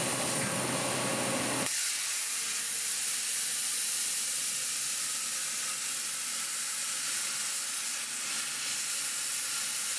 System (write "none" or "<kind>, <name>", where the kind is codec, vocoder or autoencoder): none